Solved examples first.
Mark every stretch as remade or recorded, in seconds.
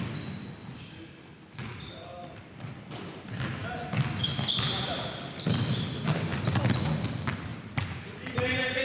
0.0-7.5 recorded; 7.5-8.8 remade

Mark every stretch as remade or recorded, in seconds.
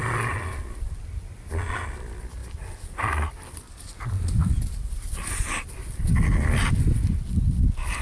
0.0-8.0 recorded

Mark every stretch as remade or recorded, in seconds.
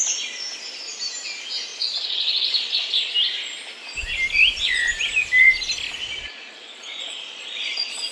0.0-1.7 recorded; 1.7-3.1 remade; 3.1-6.0 recorded; 6.0-8.1 remade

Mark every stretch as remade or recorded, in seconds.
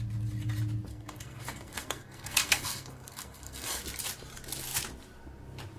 0.0-0.9 recorded; 0.9-3.8 remade; 3.8-5.8 recorded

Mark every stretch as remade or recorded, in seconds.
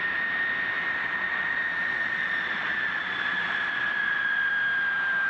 0.0-1.3 recorded; 1.3-4.5 remade; 4.5-5.3 recorded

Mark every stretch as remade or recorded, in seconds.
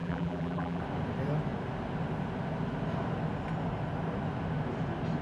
0.0-0.8 remade; 0.8-5.2 recorded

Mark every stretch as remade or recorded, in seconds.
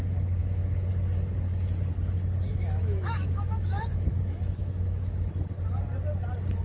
0.0-0.4 recorded; 0.4-0.9 remade; 0.9-2.5 recorded; 2.5-5.3 remade; 5.3-6.6 recorded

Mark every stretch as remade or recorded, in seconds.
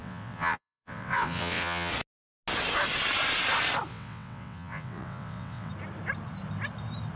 0.0-1.9 remade; 1.9-3.9 recorded; 3.9-5.7 remade; 5.7-7.2 recorded